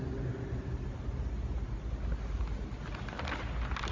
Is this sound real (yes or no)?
yes